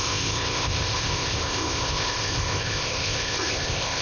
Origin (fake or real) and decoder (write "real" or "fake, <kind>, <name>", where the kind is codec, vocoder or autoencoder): fake, codec, ZipCodec